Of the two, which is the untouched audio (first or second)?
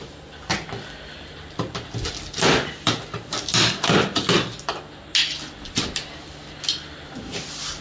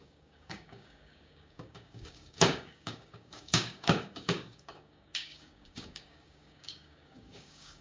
first